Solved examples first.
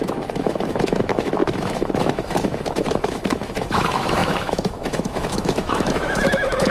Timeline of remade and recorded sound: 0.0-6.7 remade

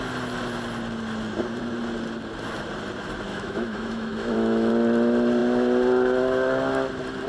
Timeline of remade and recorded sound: 0.0-3.3 recorded; 3.3-4.7 remade; 4.7-7.3 recorded

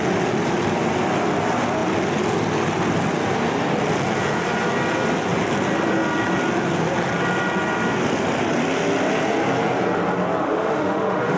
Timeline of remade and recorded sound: 0.0-10.4 recorded; 10.4-11.4 remade

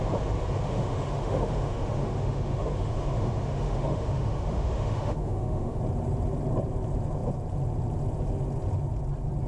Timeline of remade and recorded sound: 0.0-0.7 recorded; 0.7-5.8 remade; 5.8-9.5 recorded

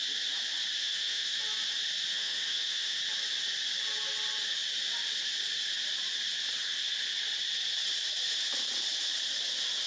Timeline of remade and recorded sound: 0.0-0.8 recorded; 0.8-1.4 remade; 1.4-2.1 recorded; 2.1-3.0 remade; 3.0-9.9 recorded

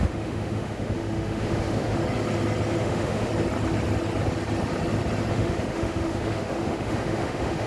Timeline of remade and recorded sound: 0.0-2.0 remade; 2.0-2.8 recorded; 2.8-3.3 remade; 3.3-5.3 recorded; 5.3-7.7 remade